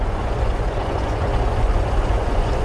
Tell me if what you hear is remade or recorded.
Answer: remade